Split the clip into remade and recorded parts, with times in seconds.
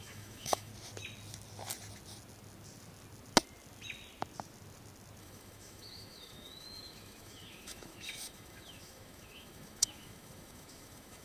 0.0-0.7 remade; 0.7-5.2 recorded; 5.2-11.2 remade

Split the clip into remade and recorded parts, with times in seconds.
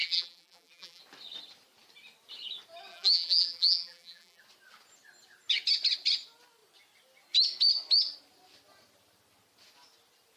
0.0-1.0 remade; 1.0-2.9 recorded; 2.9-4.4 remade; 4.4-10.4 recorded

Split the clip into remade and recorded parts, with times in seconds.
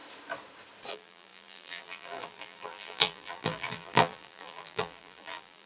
0.0-0.9 recorded; 0.9-5.7 remade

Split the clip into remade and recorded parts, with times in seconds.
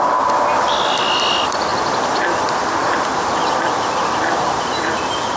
0.0-5.4 recorded